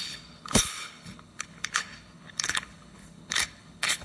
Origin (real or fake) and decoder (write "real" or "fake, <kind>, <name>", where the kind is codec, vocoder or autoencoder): fake, codec, HILCodec